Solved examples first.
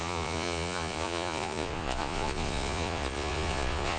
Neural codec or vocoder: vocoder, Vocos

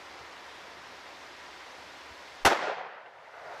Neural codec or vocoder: none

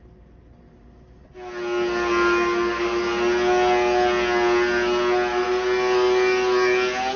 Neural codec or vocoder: none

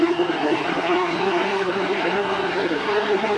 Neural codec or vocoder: codec, SNAC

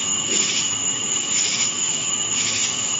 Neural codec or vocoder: autoencoder, DAC-VAE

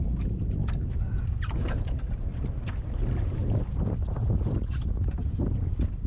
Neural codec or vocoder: vocoder, BigVGAN v2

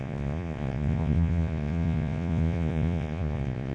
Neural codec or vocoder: vocoder, Vocos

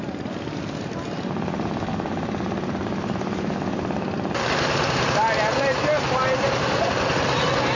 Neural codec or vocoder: none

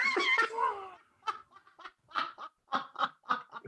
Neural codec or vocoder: none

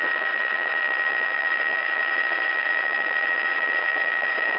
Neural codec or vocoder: vocoder, WaveNeXt